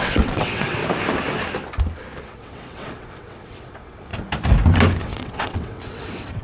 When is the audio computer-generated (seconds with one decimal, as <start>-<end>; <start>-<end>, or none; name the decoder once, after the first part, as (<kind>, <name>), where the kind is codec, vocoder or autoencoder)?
0.0-0.8 (vocoder, WaveNeXt); 2.2-4.1; 5.0-6.4